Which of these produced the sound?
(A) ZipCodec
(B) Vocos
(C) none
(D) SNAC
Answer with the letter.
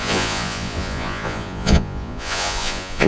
B